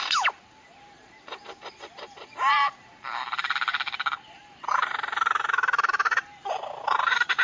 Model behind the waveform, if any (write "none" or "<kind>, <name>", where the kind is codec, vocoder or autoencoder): vocoder, BigVGAN v2